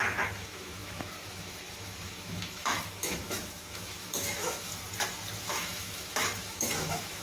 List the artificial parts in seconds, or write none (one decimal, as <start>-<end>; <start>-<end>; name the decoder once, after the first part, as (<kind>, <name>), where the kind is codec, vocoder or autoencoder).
0.0-4.7 (autoencoder, DAC-VAE); 5.4-7.2